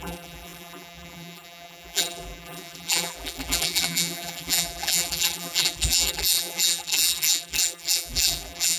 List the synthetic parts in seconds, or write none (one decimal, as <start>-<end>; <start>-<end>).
0.0-8.8